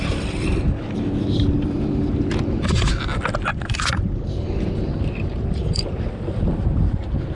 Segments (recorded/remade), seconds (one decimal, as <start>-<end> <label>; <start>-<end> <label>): 0.0-3.5 recorded; 3.5-7.3 remade